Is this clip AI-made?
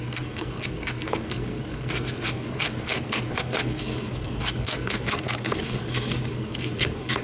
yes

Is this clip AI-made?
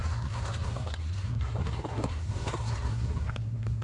yes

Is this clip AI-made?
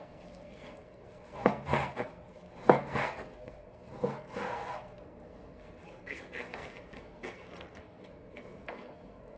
yes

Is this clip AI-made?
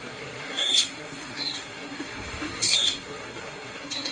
yes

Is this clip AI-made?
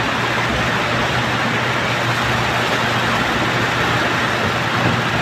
no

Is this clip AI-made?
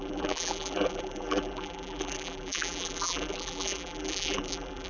yes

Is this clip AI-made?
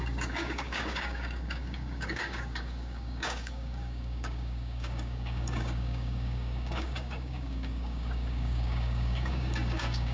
yes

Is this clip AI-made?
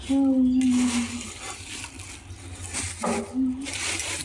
no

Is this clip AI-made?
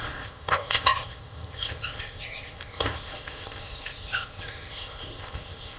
yes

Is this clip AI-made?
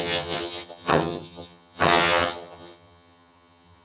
yes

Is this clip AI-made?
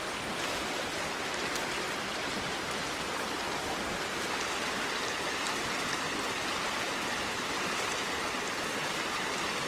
no